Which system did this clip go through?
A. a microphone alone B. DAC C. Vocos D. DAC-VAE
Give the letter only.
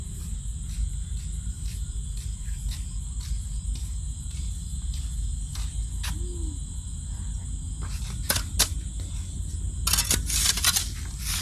A